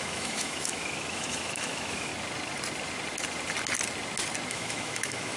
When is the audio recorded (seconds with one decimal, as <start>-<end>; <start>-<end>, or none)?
2.1-4.5